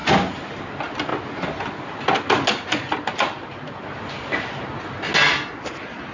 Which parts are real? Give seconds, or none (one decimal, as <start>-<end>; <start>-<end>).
0.0-6.1